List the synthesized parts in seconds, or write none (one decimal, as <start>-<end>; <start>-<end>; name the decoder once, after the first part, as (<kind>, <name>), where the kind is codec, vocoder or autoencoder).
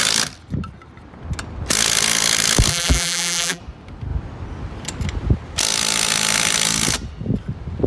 2.7-3.6 (vocoder, BigVGAN v2)